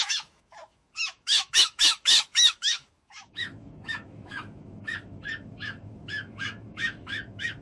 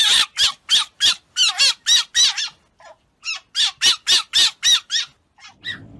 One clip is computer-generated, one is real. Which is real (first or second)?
second